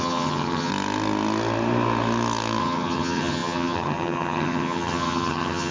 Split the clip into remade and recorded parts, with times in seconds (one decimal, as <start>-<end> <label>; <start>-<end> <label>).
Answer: 0.0-0.7 remade; 0.7-2.6 recorded; 2.6-5.7 remade

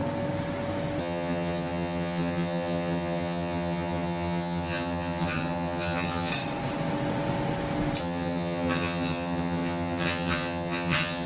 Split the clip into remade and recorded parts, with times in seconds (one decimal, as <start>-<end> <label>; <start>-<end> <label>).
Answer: 0.0-1.0 recorded; 1.0-6.3 remade; 6.3-8.0 recorded; 8.0-11.3 remade

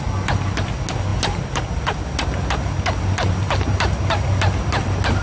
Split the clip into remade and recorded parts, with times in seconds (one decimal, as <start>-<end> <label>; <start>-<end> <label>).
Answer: 0.0-5.2 recorded